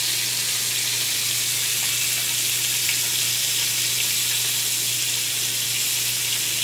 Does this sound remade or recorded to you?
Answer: recorded